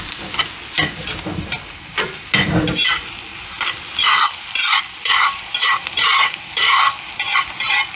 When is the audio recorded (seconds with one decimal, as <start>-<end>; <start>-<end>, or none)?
0.0-8.0